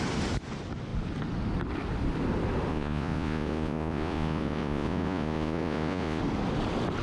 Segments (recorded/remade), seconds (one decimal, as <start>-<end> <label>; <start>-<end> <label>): 0.0-2.7 recorded; 2.7-6.2 remade; 6.2-7.0 recorded